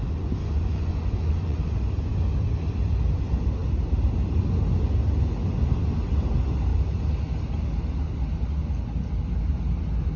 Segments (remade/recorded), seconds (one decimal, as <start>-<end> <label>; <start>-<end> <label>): 0.0-1.7 remade; 1.7-10.2 recorded